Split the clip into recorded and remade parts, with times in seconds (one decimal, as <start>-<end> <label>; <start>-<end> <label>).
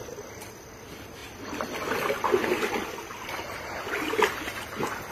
0.0-5.1 recorded